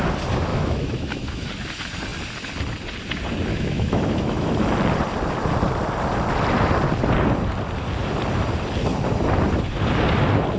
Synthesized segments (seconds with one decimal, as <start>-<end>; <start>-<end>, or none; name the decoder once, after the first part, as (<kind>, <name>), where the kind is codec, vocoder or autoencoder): 0.5-1.5 (autoencoder, DAC-VAE); 3.5-4.5